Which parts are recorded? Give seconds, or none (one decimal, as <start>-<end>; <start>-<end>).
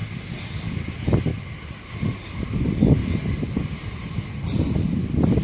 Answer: 0.0-5.4